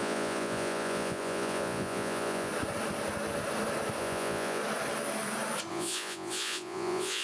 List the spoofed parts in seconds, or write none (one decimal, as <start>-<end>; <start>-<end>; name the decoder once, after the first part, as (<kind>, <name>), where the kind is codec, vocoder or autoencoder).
0.0-2.5 (vocoder, Vocos); 4.0-4.6; 5.7-7.2